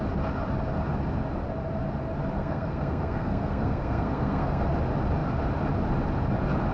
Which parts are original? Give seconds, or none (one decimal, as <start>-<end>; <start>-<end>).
0.0-2.4; 4.6-6.7